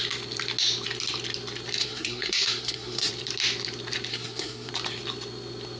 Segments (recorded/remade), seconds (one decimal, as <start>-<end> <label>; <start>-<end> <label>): 0.0-1.8 recorded; 1.8-3.1 remade; 3.1-4.1 recorded; 4.1-4.7 remade; 4.7-5.8 recorded